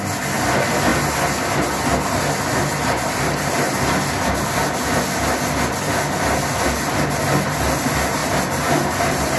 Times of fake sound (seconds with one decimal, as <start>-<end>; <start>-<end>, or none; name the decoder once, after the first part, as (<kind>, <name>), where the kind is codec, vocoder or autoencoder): 8.2-9.4 (vocoder, BigVGAN v2)